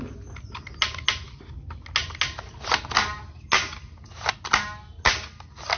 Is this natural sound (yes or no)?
yes